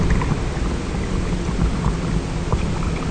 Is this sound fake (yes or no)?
no